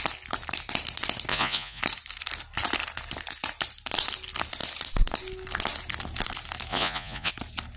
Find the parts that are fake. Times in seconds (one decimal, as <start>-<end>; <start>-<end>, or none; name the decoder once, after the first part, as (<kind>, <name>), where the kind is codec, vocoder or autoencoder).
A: 1.3-1.8 (vocoder, Vocos); 6.7-7.3